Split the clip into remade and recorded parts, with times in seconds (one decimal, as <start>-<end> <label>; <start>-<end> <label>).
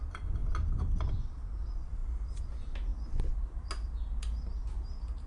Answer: 0.0-5.3 recorded